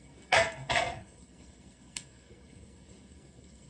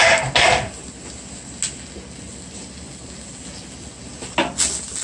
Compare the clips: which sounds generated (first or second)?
first